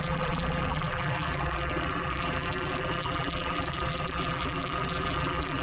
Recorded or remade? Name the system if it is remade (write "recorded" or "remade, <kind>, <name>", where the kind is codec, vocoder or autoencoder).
remade, vocoder, BigVGAN v2